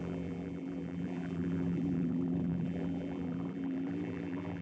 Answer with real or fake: fake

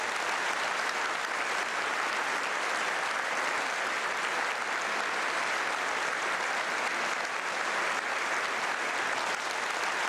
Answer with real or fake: real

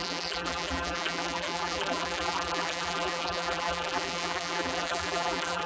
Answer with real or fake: fake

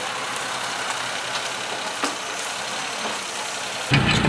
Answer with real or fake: real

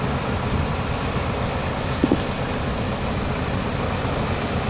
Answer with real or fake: real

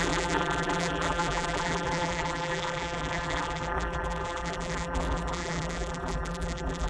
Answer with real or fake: fake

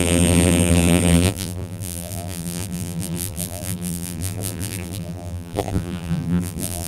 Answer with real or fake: fake